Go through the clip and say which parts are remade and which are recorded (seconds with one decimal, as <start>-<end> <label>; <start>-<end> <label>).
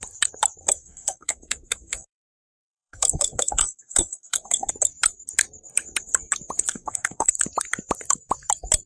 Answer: 0.0-0.6 recorded; 0.6-4.7 remade; 4.7-6.7 recorded; 6.7-7.3 remade; 7.3-8.9 recorded